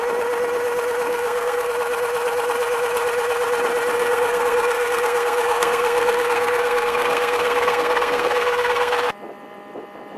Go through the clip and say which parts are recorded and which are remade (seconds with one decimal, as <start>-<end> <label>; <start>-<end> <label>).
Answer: 0.0-1.1 recorded; 1.1-1.7 remade; 1.7-3.9 recorded; 3.9-9.1 remade; 9.1-10.2 recorded